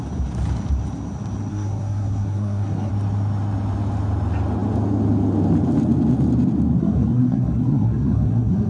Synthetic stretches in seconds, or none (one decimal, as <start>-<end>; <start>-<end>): 1.5-2.9; 6.8-8.7